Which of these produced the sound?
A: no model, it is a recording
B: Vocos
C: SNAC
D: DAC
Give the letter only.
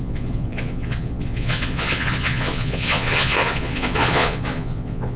B